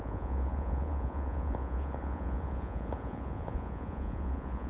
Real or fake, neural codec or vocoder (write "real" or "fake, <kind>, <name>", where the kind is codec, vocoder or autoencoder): fake, vocoder, Vocos